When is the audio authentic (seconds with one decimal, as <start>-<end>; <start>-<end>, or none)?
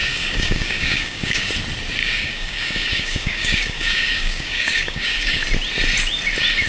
1.5-2.0; 5.4-6.7